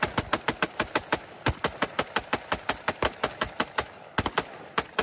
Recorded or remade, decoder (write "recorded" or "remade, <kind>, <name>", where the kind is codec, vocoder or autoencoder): recorded